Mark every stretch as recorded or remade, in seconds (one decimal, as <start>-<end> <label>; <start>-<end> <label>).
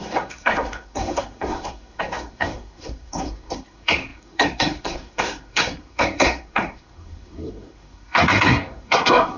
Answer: 0.0-9.4 remade